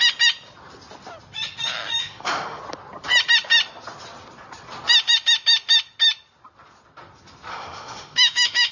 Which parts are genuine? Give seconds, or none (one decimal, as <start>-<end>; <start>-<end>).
0.0-2.0; 2.6-7.5